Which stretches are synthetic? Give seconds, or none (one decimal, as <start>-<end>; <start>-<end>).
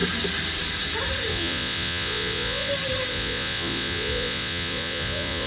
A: 1.3-2.7; 3.1-5.5